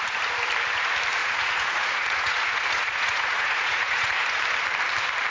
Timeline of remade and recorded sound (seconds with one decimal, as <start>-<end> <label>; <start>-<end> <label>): 0.0-1.2 recorded; 1.2-4.4 remade; 4.4-5.3 recorded